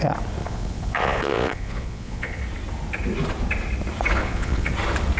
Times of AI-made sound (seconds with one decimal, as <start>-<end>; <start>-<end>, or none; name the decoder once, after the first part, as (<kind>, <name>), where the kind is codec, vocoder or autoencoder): 0.4-2.4 (vocoder, Vocos); 4.2-4.7